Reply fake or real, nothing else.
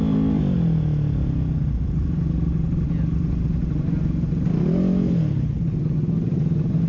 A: real